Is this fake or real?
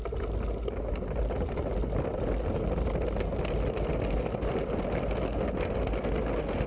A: real